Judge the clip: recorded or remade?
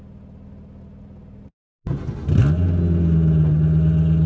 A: recorded